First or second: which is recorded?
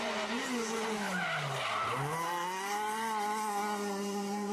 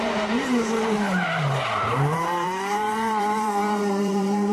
first